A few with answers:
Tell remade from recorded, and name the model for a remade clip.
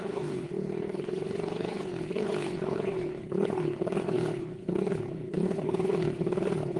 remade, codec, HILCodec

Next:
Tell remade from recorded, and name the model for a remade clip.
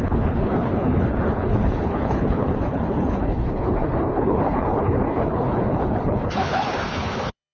remade, codec, HILCodec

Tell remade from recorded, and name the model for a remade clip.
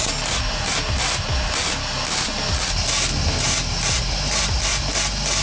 recorded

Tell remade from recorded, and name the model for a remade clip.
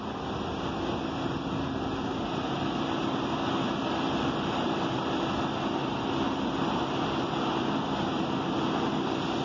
recorded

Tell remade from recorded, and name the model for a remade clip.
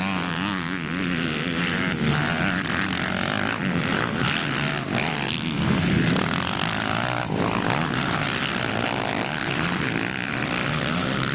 recorded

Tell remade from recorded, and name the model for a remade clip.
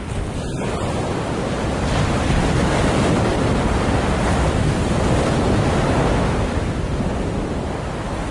recorded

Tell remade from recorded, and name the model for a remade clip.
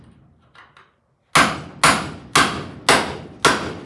recorded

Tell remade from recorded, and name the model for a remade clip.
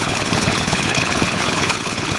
remade, codec, HILCodec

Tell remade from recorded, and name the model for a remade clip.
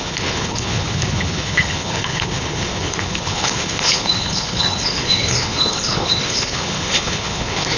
remade, codec, HILCodec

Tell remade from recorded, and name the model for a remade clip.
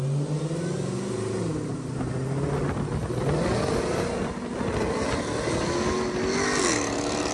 recorded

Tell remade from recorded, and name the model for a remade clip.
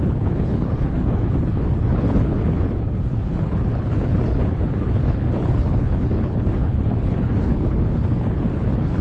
remade, codec, HILCodec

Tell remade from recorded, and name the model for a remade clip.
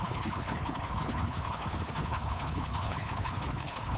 remade, codec, HILCodec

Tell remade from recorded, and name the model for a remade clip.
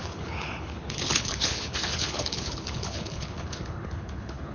remade, codec, HILCodec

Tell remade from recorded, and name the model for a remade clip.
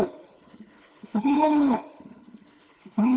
remade, codec, HILCodec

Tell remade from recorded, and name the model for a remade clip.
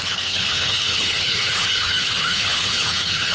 remade, codec, HILCodec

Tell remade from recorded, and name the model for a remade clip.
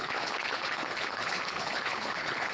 remade, codec, HILCodec